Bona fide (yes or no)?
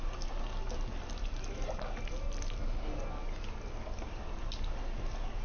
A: yes